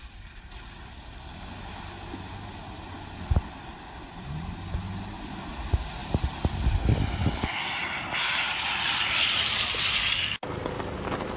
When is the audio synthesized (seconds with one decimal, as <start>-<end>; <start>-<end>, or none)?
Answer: none